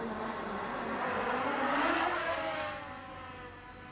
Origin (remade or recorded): recorded